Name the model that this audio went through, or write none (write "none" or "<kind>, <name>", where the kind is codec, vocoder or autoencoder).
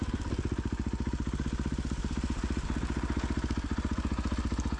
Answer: none